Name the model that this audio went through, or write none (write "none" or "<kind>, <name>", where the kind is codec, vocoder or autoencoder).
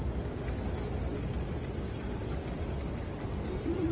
none